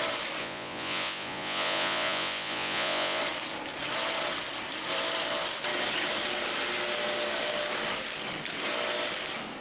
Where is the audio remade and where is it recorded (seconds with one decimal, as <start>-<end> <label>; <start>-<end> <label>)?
0.0-0.4 recorded; 0.4-3.2 remade; 3.2-9.6 recorded